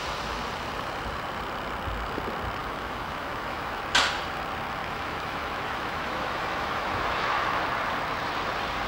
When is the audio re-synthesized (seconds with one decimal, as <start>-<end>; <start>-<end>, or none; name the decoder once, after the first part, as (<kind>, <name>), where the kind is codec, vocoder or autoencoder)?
2.6-3.8 (autoencoder, DAC-VAE); 4.8-7.6